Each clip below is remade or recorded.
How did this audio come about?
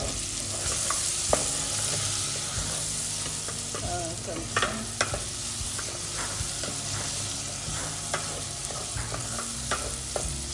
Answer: recorded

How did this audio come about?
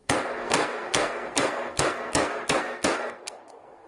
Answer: remade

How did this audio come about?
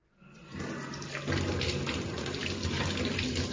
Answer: recorded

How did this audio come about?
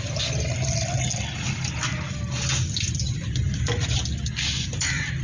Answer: recorded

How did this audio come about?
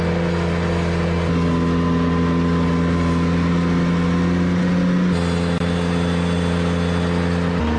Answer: recorded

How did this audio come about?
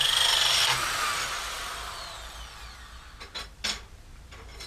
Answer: recorded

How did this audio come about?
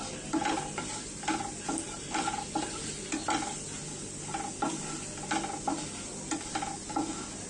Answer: recorded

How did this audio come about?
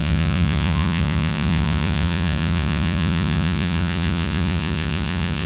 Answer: remade